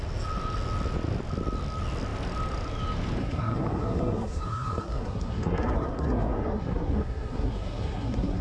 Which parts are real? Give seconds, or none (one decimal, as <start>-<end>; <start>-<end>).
0.0-3.2